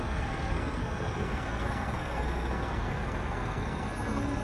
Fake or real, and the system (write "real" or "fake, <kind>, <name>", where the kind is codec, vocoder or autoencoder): fake, codec, SNAC